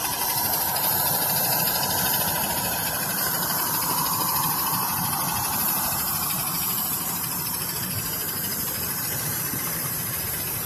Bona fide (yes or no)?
no